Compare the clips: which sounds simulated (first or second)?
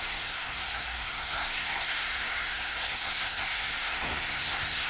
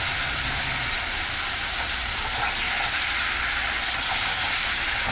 first